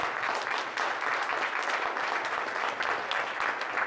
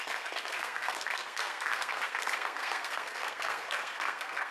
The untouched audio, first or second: first